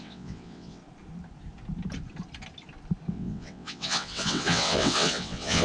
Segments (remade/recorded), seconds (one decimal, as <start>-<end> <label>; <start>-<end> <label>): 0.0-0.8 remade; 0.8-3.1 recorded; 3.1-5.6 remade